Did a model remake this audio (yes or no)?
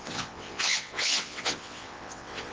yes